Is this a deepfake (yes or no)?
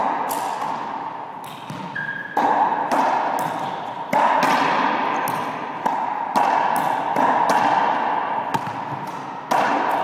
no